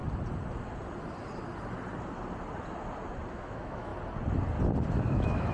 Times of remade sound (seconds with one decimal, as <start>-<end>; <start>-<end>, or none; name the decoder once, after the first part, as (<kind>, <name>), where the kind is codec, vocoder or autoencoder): 3.3-3.9 (autoencoder, DAC-VAE); 5.0-5.5

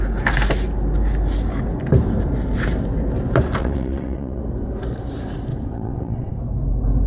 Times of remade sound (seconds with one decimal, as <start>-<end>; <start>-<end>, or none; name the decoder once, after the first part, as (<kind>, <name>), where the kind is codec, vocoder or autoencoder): 3.6-4.4 (vocoder, WaveNeXt); 5.5-6.3

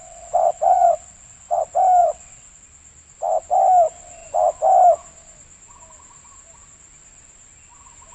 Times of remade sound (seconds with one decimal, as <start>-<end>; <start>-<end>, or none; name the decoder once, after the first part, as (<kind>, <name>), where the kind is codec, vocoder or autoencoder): 0.0-1.6 (vocoder, WaveNeXt); 2.0-2.6

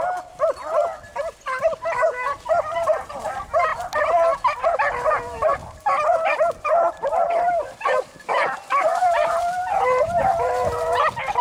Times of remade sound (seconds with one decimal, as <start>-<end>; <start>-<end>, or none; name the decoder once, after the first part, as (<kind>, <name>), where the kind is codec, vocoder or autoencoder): 5.6-8.4 (vocoder, BigVGAN v2); 8.9-10.2

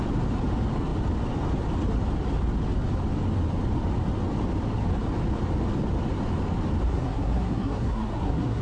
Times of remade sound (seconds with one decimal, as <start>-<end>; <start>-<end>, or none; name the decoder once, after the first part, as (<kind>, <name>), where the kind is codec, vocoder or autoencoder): 6.9-8.6 (codec, SNAC)

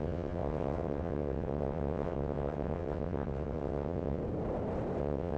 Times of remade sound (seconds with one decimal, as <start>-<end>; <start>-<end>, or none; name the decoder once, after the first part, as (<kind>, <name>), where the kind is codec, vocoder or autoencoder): 0.0-4.2 (vocoder, WaveNeXt); 5.0-5.4